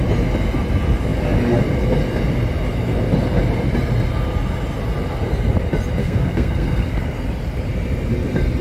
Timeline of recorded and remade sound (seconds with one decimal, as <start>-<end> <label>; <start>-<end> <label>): 0.0-6.0 recorded; 6.0-7.0 remade; 7.0-8.6 recorded